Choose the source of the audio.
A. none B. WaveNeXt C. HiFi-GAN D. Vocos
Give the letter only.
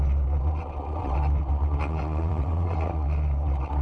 B